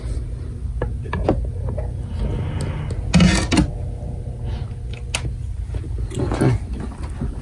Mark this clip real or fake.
real